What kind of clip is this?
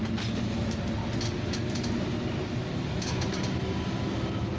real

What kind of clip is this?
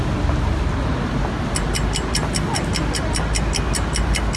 real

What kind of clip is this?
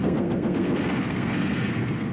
fake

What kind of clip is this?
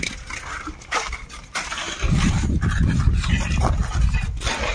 real